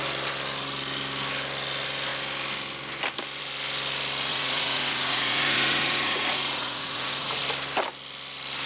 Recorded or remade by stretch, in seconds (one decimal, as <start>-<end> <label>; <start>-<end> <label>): 0.0-4.3 recorded; 4.3-7.4 remade; 7.4-8.7 recorded